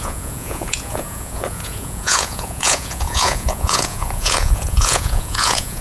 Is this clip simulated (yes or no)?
yes